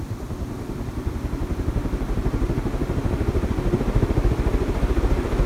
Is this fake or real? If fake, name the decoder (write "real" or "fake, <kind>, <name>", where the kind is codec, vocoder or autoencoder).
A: real